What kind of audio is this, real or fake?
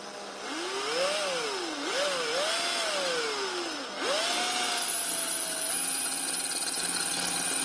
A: real